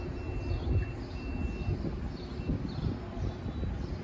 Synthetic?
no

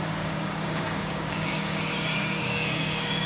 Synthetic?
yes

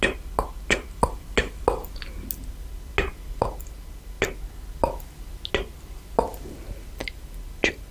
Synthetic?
no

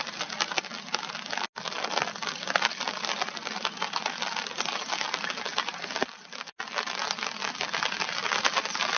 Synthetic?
no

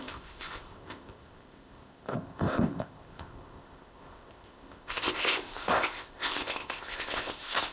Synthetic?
yes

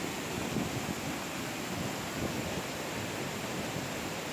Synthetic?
yes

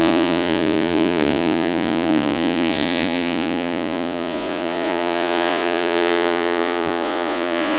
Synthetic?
yes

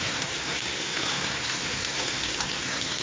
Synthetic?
yes